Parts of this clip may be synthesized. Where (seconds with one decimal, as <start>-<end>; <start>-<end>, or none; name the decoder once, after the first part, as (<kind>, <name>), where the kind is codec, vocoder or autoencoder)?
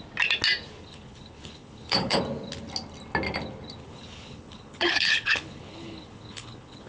0.8-2.2 (codec, HILCodec); 3.8-6.9